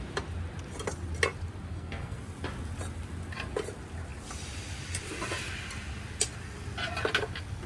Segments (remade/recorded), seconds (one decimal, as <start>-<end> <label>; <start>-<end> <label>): 0.0-1.7 recorded; 1.7-2.2 remade; 2.2-7.7 recorded